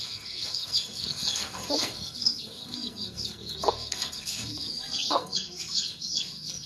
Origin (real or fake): fake